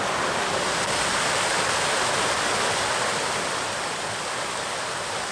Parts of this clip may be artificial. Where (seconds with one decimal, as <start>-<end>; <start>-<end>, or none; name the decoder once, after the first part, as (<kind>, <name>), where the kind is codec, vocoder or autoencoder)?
none